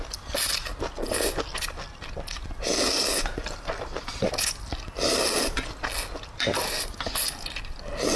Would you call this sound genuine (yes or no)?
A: yes